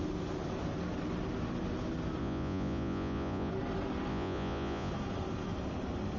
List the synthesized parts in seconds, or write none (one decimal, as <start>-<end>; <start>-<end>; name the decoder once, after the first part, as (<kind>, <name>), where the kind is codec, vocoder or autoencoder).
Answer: 2.2-3.5 (vocoder, Vocos); 4.1-4.9